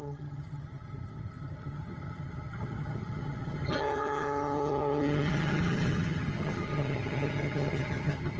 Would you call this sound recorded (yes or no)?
no